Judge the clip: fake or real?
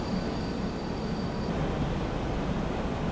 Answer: real